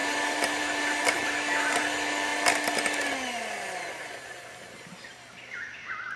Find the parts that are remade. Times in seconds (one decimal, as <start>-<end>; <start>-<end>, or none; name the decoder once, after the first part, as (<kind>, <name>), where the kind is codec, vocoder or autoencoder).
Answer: 0.0-1.7 (vocoder, BigVGAN v2)